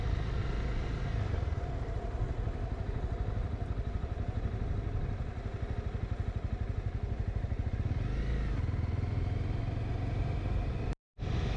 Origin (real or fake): real